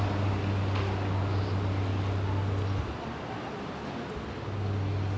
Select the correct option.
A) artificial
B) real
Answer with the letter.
B